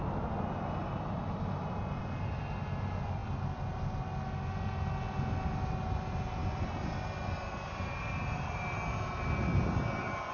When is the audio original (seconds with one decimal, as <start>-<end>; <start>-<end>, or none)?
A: 0.0-0.8; 2.0-6.4